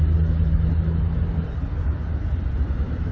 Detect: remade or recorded recorded